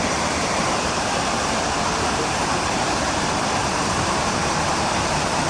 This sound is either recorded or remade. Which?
remade